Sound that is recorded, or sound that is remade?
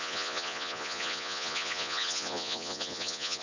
remade